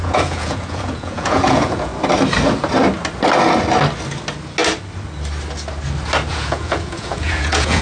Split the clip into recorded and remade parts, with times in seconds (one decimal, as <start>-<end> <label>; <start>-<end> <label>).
0.0-1.9 remade; 1.9-6.3 recorded; 6.3-7.8 remade

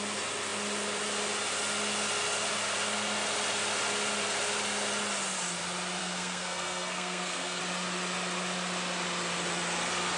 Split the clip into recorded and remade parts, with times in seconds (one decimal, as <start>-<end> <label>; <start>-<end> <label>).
0.0-6.0 recorded; 6.0-7.6 remade; 7.6-10.2 recorded

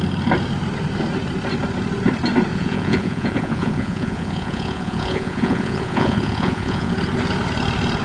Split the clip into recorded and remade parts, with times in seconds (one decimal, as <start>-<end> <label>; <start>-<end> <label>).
0.0-2.5 recorded; 2.5-6.9 remade; 6.9-8.0 recorded

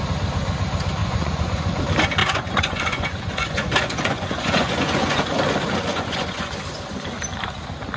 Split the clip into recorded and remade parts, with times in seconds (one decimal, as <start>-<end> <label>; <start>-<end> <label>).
0.0-1.0 recorded; 1.0-1.8 remade; 1.8-2.2 recorded; 2.2-5.2 remade; 5.2-5.9 recorded; 5.9-6.5 remade; 6.5-8.0 recorded

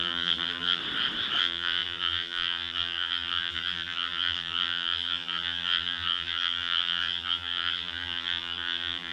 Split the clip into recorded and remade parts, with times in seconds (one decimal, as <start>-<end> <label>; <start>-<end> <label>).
0.0-0.8 remade; 0.8-1.4 recorded; 1.4-9.1 remade

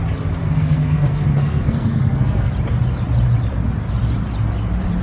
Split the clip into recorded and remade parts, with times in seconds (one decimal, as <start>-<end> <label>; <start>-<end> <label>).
0.0-0.4 recorded; 0.4-2.5 remade; 2.5-5.0 recorded

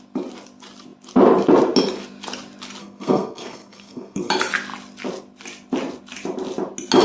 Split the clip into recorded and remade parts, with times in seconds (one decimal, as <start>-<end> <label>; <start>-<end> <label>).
0.0-2.8 recorded; 2.8-4.3 remade; 4.3-7.0 recorded